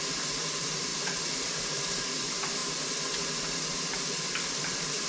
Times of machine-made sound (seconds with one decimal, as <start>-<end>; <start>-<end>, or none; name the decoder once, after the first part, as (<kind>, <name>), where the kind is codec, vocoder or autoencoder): 0.0-0.9 (vocoder, BigVGAN v2); 1.5-2.6; 4.6-5.1